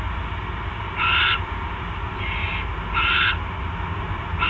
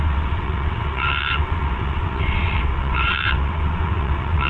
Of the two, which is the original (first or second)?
first